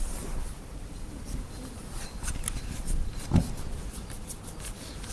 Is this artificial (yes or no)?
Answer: no